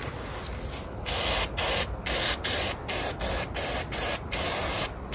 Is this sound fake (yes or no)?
no